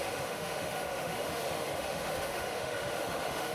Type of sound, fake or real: fake